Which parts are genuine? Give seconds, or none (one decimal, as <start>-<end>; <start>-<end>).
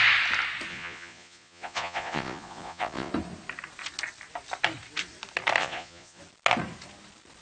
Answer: 0.0-0.7; 3.1-5.6; 6.2-7.4